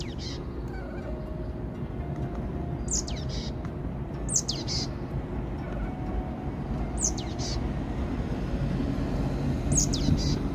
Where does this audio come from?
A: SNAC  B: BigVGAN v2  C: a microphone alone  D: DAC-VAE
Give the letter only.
C